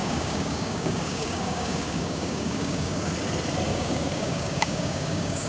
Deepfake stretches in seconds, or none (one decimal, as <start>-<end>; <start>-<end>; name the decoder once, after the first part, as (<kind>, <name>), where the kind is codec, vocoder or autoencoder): 0.0-3.1 (codec, DAC); 3.7-5.5